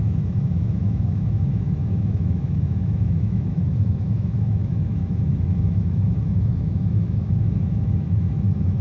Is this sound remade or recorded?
remade